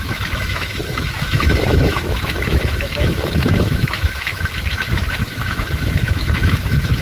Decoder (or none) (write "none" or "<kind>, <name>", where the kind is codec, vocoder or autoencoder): autoencoder, DAC-VAE